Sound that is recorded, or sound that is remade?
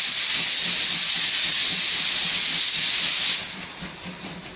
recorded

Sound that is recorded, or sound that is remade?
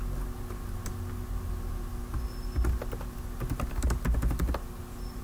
recorded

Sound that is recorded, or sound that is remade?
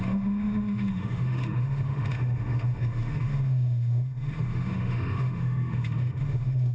remade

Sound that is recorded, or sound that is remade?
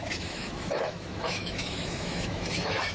remade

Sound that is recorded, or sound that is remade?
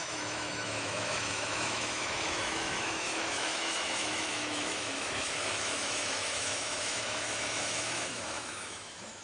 remade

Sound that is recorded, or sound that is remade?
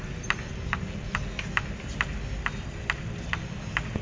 recorded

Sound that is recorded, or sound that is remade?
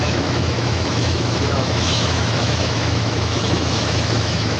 remade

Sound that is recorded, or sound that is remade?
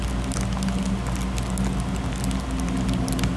recorded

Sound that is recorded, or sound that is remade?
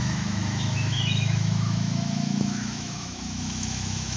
remade